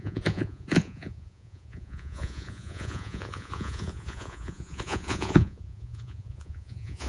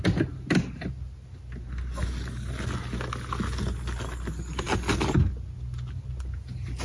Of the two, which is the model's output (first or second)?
first